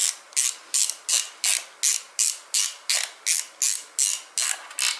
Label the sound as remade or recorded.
recorded